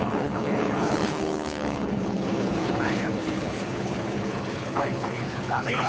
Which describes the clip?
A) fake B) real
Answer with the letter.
A